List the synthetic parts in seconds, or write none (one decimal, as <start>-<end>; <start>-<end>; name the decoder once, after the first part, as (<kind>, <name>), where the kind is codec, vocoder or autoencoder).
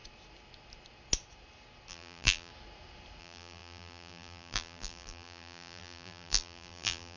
1.9-2.5 (vocoder, BigVGAN v2); 3.2-7.2